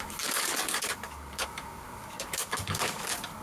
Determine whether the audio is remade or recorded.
remade